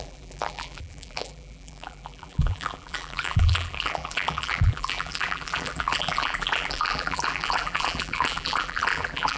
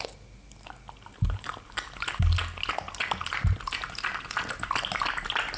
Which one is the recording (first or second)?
second